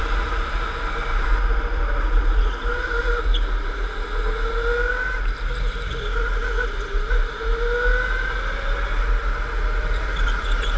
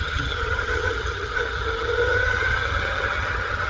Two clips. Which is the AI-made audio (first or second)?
second